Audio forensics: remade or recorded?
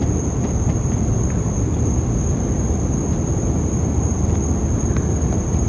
recorded